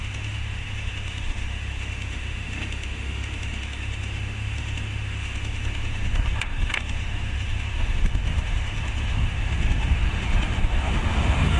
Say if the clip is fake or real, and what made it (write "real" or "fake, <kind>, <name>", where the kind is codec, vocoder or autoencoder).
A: fake, autoencoder, DAC-VAE